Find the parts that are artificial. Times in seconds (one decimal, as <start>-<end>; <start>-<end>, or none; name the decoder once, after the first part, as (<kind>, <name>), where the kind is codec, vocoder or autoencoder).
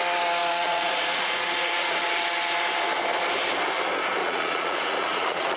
0.4-1.7 (vocoder, Vocos); 4.2-5.6